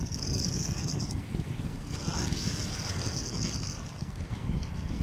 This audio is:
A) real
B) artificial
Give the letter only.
B